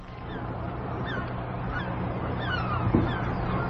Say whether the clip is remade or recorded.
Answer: recorded